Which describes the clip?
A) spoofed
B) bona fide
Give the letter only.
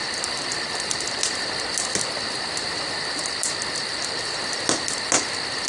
B